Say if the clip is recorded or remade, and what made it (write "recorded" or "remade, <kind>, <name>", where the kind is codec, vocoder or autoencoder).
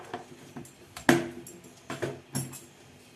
recorded